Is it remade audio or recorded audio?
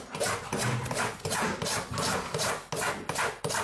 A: recorded